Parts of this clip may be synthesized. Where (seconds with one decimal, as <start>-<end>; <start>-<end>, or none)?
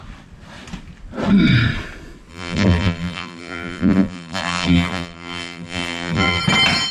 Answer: 2.3-6.4